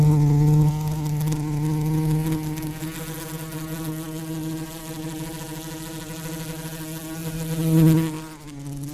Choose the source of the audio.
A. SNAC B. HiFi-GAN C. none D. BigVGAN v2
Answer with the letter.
C